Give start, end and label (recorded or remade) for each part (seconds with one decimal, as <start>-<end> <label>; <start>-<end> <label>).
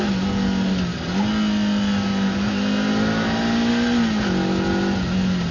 0.0-5.5 recorded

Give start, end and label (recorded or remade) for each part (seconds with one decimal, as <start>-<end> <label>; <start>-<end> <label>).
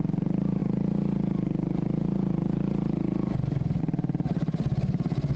0.0-5.4 recorded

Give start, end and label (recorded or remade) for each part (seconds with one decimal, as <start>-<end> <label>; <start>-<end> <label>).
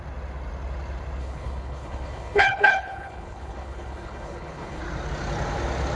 0.0-1.2 recorded; 1.2-4.8 remade; 4.8-6.0 recorded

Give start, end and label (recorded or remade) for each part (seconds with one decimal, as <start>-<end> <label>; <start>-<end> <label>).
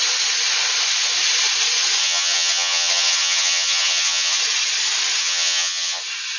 0.0-2.0 recorded; 2.0-4.4 remade; 4.4-5.2 recorded; 5.2-6.0 remade; 6.0-6.4 recorded